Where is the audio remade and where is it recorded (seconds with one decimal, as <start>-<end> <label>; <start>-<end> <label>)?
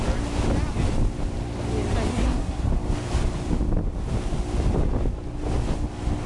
0.0-2.1 recorded; 2.1-2.7 remade; 2.7-6.3 recorded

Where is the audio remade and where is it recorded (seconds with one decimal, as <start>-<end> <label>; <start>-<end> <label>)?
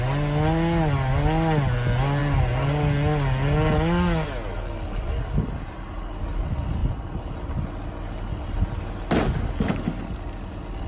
0.0-10.9 recorded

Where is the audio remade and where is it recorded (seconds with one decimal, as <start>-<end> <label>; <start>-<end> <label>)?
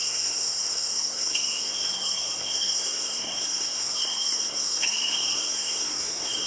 0.0-6.5 remade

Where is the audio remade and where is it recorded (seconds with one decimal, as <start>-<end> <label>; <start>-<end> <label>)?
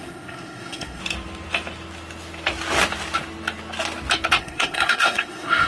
0.0-1.0 remade; 1.0-4.4 recorded; 4.4-5.7 remade